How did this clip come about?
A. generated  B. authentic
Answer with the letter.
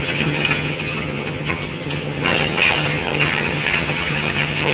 A